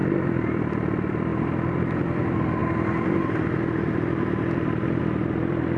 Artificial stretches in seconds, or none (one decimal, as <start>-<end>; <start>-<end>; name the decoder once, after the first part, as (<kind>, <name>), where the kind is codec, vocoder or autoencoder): 0.0-2.6 (vocoder, BigVGAN v2); 5.0-5.8